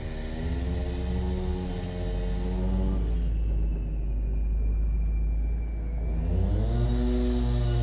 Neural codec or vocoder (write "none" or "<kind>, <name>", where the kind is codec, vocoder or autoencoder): none